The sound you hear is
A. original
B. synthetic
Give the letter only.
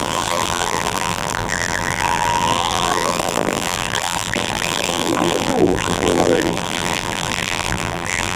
B